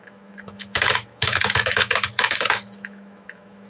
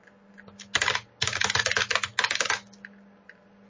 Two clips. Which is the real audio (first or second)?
second